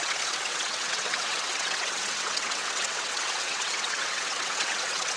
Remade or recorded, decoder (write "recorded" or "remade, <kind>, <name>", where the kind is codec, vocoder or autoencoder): remade, vocoder, WaveNeXt